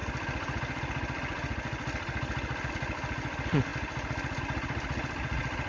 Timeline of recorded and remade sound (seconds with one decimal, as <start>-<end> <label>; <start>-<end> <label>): 0.0-5.7 recorded